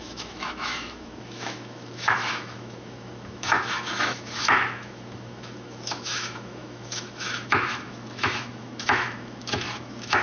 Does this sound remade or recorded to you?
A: remade